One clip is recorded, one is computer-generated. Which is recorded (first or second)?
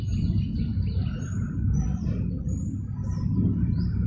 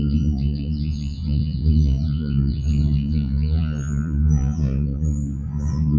first